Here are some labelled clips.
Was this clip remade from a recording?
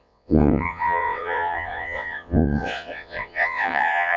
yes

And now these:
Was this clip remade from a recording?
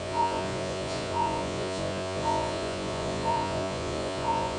yes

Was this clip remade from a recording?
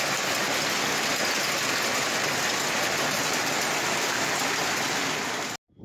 no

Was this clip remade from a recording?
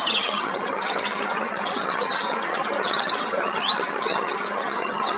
yes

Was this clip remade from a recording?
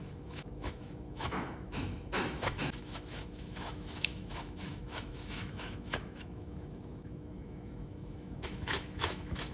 yes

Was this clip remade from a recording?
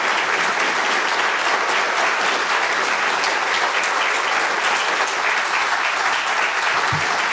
no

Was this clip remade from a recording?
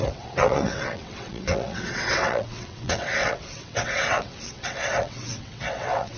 yes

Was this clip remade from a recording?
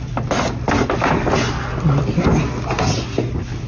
no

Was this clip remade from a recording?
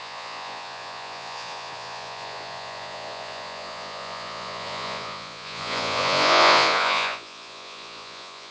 yes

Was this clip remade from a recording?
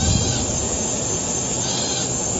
no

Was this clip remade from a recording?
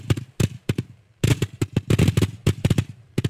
no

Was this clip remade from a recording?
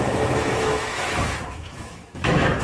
yes